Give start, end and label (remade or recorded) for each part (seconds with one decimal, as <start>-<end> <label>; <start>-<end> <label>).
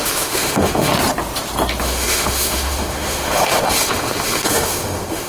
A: 0.0-0.9 remade; 0.9-1.8 recorded; 1.8-5.3 remade